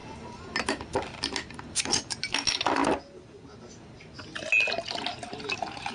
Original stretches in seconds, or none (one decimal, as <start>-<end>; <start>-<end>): 0.0-5.9